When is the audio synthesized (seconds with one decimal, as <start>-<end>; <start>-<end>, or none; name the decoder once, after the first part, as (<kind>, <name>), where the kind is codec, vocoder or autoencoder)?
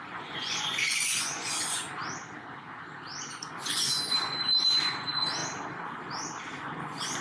0.0-2.0 (vocoder, Vocos); 3.2-5.4; 6.6-7.2